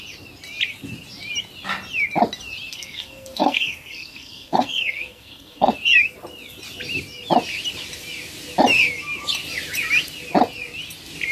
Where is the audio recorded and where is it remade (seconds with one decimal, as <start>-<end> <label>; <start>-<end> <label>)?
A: 0.0-2.7 recorded; 2.7-5.7 remade; 5.7-11.3 recorded